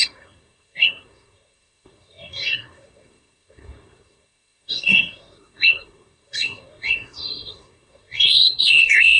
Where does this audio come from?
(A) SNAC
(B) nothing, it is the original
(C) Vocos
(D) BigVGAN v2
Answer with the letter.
A